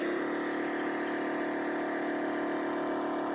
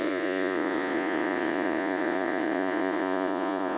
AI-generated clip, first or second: second